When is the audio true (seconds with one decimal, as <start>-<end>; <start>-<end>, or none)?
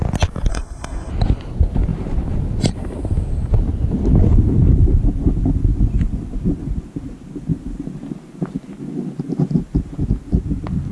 0.0-0.5; 1.1-10.9